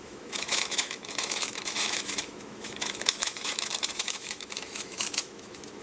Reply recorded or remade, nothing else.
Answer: remade